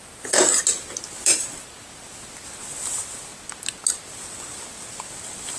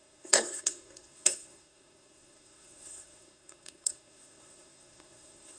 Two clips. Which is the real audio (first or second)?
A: first